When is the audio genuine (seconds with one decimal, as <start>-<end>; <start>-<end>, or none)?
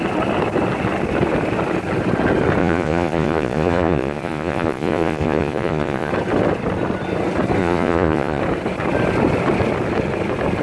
0.0-2.6; 6.1-7.6; 8.4-10.6